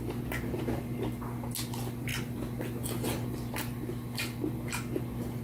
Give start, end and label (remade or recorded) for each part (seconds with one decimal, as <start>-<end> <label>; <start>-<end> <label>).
0.0-5.4 recorded